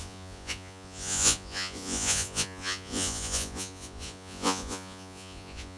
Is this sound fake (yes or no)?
yes